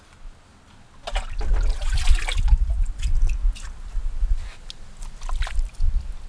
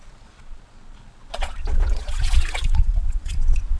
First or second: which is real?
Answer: first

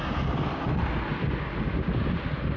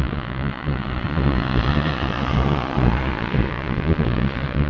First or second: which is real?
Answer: first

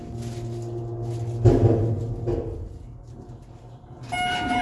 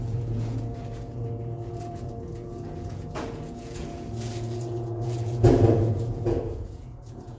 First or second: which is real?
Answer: first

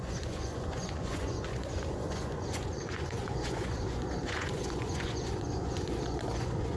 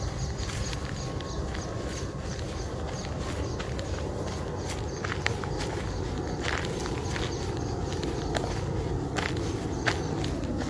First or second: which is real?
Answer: second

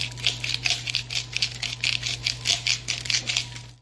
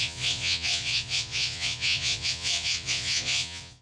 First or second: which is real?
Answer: first